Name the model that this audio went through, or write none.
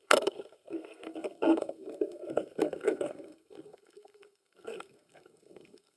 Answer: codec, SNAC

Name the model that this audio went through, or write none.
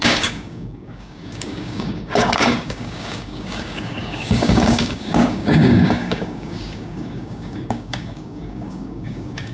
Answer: codec, DAC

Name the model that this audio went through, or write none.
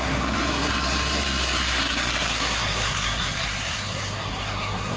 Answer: codec, SNAC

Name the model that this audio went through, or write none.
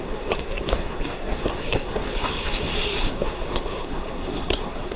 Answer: codec, SNAC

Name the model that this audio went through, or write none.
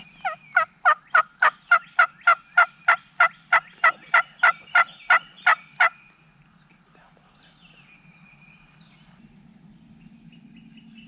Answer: none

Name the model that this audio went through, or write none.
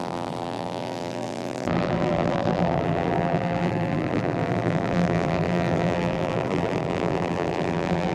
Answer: vocoder, BigVGAN v2